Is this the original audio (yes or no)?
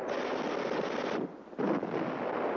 yes